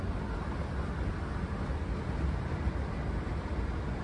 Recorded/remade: recorded